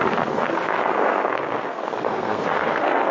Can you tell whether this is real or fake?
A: fake